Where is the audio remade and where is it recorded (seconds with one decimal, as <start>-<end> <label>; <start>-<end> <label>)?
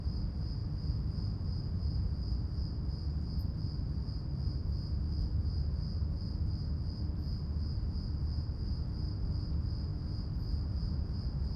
0.0-11.6 recorded